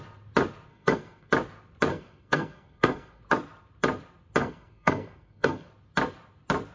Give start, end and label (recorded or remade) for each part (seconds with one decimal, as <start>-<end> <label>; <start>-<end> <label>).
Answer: 0.0-0.7 recorded; 0.7-1.3 remade; 1.3-1.9 recorded; 1.9-3.2 remade; 3.2-4.4 recorded; 4.4-5.7 remade; 5.7-6.7 recorded